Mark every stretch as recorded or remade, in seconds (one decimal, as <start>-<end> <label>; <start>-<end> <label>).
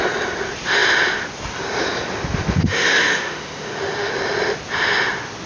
0.0-2.6 recorded; 2.6-4.1 remade; 4.1-5.5 recorded